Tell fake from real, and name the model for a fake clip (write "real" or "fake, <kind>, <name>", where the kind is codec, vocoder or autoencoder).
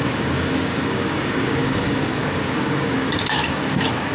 fake, codec, DAC